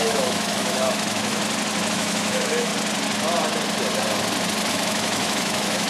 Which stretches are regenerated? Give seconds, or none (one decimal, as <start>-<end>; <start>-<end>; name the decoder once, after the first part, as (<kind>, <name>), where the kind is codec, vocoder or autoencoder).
0.0-1.4 (autoencoder, DAC-VAE); 1.9-2.7; 4.7-5.9